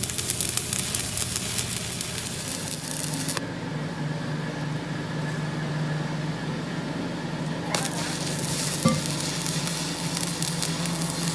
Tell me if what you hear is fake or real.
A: real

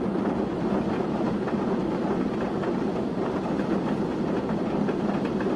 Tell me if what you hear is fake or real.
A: real